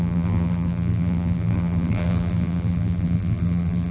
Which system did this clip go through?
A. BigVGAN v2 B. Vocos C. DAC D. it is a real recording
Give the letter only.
A